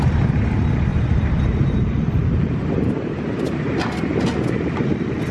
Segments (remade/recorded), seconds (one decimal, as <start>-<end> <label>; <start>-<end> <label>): 0.0-0.9 recorded; 0.9-2.9 remade; 2.9-3.3 recorded; 3.3-3.8 remade; 3.8-5.3 recorded

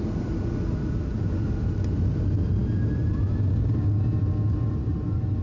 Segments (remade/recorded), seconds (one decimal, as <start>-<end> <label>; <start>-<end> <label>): 0.0-5.4 recorded

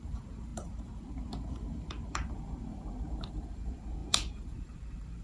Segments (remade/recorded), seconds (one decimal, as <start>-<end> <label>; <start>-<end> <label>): 0.0-5.2 remade

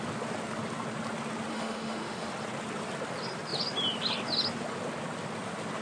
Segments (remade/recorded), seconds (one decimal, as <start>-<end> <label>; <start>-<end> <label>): 0.0-1.5 recorded; 1.5-2.3 remade; 2.3-5.8 recorded

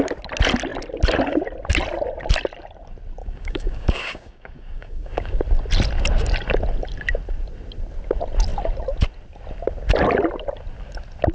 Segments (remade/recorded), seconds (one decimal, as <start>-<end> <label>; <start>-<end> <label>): 0.0-3.2 recorded; 3.2-5.4 remade; 5.4-11.3 recorded

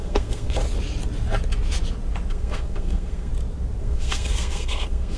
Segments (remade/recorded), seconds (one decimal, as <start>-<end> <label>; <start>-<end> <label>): 0.0-0.6 remade; 0.6-2.3 recorded; 2.3-3.3 remade; 3.3-3.8 recorded; 3.8-5.2 remade

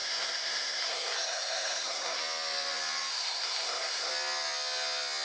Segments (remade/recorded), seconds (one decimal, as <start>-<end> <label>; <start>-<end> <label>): 0.0-2.2 remade; 2.2-3.1 recorded; 3.1-4.1 remade; 4.1-5.2 recorded

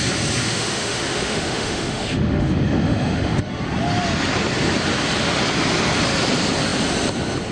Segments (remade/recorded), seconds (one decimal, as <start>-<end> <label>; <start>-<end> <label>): 0.0-0.4 recorded; 0.4-3.4 remade; 3.4-7.5 recorded